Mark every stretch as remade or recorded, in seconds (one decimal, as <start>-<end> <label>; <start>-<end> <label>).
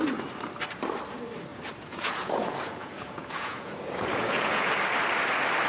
0.0-1.5 recorded; 1.5-4.7 remade; 4.7-5.7 recorded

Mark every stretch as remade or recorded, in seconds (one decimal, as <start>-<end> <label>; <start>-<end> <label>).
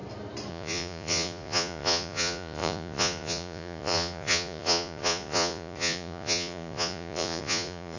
0.0-0.5 recorded; 0.5-8.0 remade